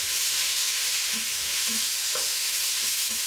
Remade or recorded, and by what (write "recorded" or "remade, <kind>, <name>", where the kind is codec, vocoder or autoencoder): remade, autoencoder, DAC-VAE